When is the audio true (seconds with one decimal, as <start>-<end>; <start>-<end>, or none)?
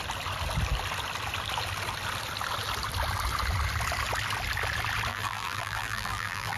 0.0-5.1